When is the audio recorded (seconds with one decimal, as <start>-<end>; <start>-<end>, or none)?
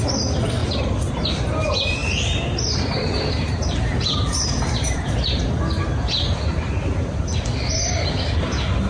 0.0-2.0; 5.6-8.9